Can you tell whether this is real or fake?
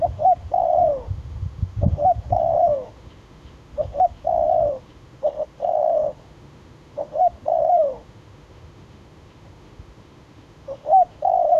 fake